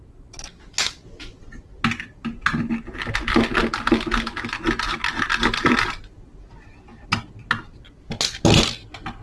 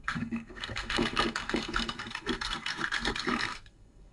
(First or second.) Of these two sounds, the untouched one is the first